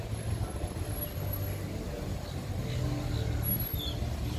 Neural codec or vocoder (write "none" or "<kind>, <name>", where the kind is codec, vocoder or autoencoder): none